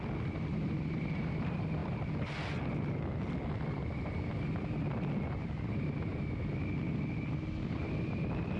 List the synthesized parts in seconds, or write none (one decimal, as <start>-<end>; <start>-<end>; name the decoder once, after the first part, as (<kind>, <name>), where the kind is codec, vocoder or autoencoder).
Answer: none